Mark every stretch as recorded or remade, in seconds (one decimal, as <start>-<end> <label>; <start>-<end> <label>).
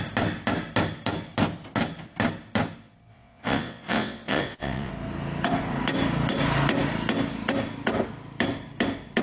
0.0-3.1 recorded; 3.1-4.9 remade; 4.9-9.2 recorded